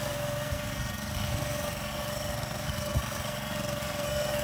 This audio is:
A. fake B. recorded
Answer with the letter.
A